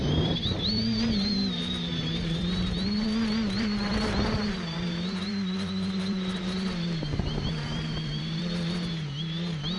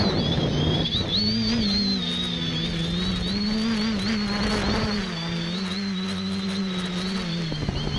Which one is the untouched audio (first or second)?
second